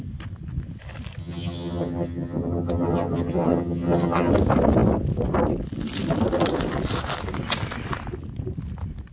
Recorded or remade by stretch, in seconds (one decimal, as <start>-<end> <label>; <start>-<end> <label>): 0.0-1.2 recorded; 1.2-4.3 remade; 4.3-9.1 recorded